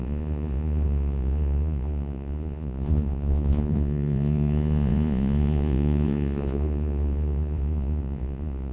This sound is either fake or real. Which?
fake